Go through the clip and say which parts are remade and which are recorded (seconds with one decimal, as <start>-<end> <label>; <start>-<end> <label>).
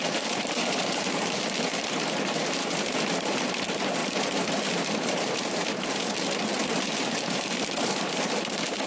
0.0-5.6 remade; 5.6-6.7 recorded; 6.7-8.9 remade